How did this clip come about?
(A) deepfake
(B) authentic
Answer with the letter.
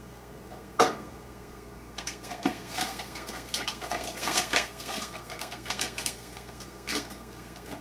A